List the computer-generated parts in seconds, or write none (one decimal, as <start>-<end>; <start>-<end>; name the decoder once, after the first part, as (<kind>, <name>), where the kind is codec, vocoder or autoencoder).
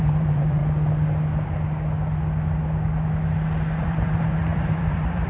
0.0-0.6 (vocoder, BigVGAN v2); 3.8-5.3